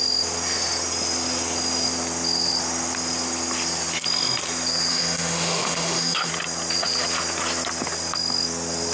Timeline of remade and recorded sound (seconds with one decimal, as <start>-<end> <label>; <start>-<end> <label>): 0.0-4.9 recorded; 4.9-6.3 remade; 6.3-8.9 recorded